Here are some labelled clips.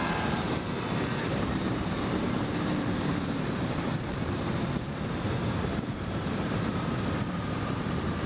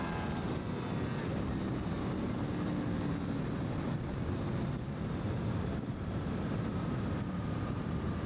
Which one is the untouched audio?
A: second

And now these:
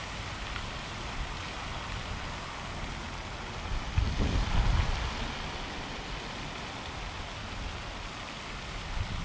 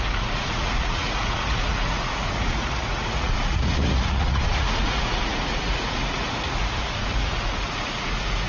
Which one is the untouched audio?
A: first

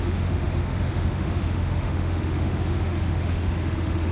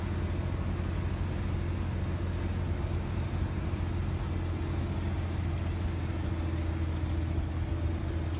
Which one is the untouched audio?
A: second